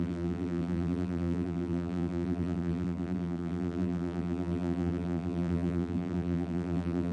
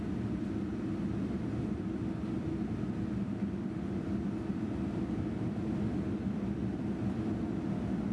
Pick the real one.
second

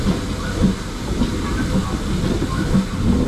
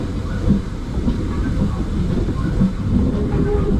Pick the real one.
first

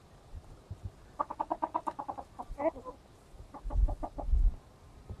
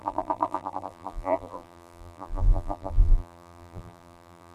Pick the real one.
first